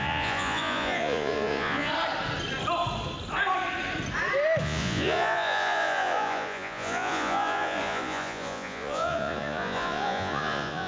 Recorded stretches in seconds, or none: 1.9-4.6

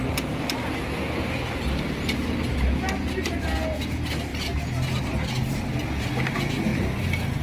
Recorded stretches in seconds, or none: 0.0-7.4

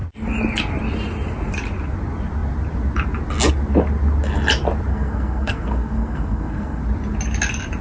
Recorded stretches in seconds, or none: 0.0-4.9; 6.8-7.8

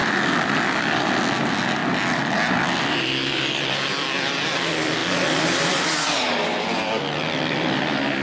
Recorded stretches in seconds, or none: 0.0-8.2

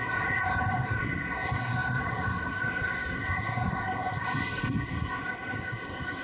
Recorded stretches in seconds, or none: none

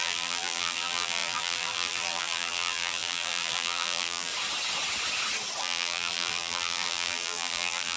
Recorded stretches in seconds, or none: 4.3-5.6